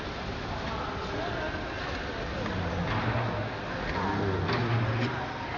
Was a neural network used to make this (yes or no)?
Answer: no